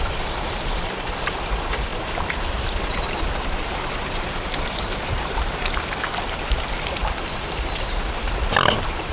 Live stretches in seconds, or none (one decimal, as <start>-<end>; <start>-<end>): 0.0-1.9; 4.2-7.0; 8.2-9.1